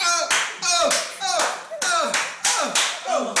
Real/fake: real